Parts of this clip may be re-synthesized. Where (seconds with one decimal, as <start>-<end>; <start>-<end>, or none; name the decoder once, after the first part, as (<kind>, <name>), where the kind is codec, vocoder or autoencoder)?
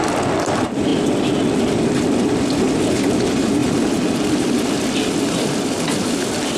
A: 0.0-0.9 (vocoder, BigVGAN v2); 1.6-6.6